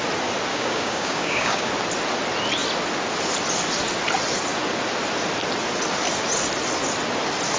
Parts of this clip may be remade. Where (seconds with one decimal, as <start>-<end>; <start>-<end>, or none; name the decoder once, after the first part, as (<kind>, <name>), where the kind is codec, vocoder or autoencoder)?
0.5-1.7 (codec, DAC)

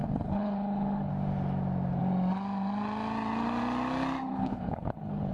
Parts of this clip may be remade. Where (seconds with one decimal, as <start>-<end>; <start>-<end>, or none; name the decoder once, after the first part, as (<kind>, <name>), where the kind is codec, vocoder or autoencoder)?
0.0-1.1 (codec, HILCodec); 4.3-5.3

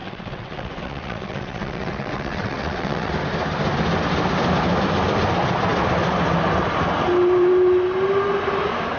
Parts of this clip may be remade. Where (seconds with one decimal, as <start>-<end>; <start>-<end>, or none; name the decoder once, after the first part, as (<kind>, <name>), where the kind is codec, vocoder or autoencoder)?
0.0-3.1 (vocoder, WaveNeXt)

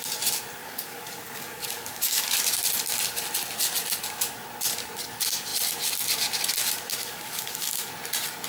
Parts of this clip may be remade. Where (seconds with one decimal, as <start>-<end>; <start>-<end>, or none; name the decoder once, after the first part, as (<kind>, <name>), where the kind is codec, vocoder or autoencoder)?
0.6-2.3 (codec, DAC); 6.9-7.9

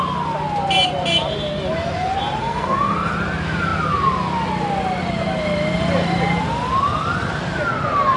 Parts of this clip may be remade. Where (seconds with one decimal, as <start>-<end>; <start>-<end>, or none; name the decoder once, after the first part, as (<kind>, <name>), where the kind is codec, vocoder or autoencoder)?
2.4-3.1 (codec, SNAC)

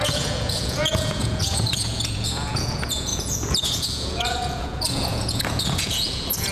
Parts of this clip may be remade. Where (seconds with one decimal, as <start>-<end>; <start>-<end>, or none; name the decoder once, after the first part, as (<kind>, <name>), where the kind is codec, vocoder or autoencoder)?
0.0-6.5 (vocoder, Vocos)

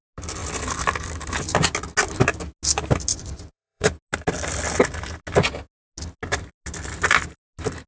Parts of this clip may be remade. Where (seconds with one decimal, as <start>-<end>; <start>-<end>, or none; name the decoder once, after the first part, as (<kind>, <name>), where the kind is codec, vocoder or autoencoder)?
3.1-3.9 (vocoder, Vocos)

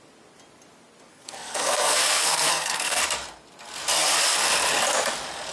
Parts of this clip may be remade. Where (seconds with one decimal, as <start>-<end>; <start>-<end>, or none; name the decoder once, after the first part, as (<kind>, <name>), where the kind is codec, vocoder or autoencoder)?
1.1-3.0 (codec, SNAC)